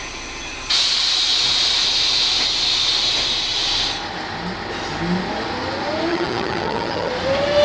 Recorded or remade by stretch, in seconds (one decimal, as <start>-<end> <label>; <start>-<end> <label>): 0.0-6.1 recorded; 6.1-7.1 remade; 7.1-7.6 recorded